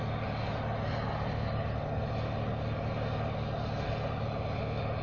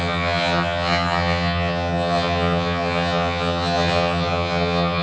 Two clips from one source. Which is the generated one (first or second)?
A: second